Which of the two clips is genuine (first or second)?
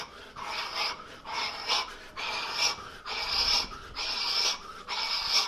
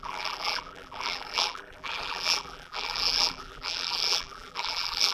first